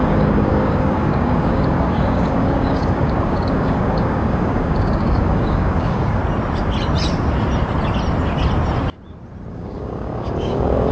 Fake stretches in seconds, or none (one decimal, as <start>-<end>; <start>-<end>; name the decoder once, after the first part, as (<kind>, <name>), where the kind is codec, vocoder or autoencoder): 0.0-6.2 (codec, DAC); 9.5-10.9